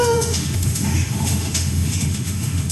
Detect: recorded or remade remade